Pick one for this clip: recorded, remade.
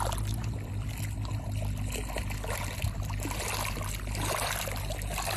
recorded